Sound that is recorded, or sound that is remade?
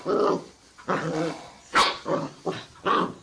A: recorded